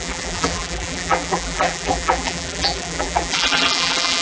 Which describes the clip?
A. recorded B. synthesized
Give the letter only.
B